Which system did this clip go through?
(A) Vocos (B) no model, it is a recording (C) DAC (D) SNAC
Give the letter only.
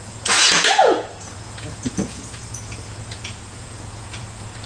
A